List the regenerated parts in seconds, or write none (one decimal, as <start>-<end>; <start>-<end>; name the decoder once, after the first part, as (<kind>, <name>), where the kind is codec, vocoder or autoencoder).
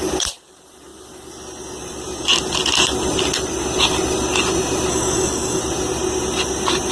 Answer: 4.9-5.6 (codec, DAC)